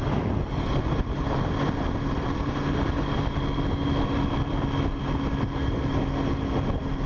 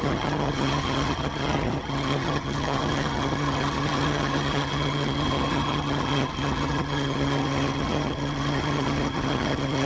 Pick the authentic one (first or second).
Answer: first